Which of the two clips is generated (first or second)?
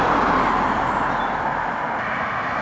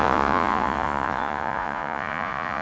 second